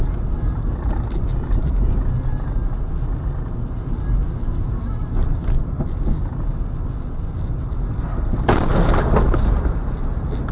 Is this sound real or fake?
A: real